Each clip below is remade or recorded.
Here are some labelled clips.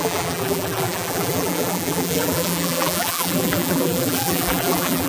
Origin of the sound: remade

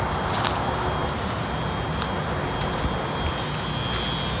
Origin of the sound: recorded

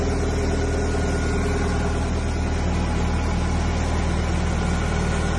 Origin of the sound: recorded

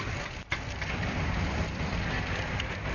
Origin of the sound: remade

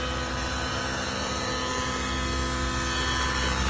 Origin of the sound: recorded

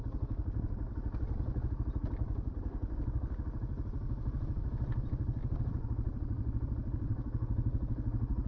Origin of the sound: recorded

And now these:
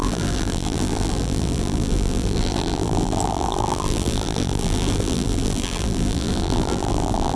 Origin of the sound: remade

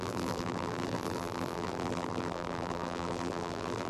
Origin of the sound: remade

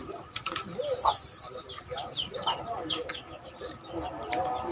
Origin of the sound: recorded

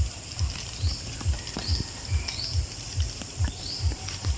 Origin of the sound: remade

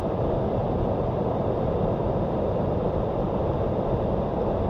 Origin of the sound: remade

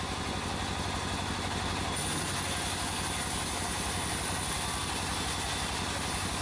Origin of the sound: recorded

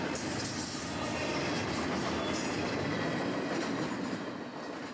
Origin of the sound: recorded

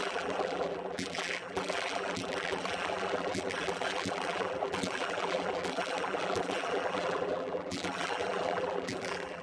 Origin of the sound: remade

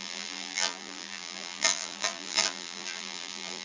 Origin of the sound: remade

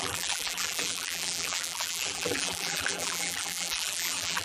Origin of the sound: remade